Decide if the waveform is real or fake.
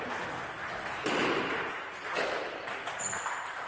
real